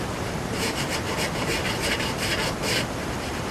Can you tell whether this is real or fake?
fake